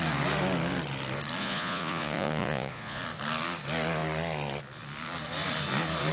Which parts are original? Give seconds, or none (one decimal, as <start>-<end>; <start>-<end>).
0.0-1.4; 3.0-6.1